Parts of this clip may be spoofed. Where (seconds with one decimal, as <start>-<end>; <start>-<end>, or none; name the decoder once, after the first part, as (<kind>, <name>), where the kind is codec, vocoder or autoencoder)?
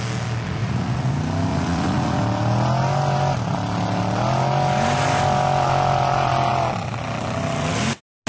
0.6-1.1 (vocoder, Vocos); 1.5-2.2